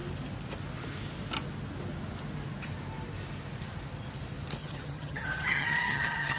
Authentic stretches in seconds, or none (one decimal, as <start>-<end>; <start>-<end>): 0.0-4.6